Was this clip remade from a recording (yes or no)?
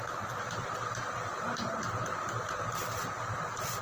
yes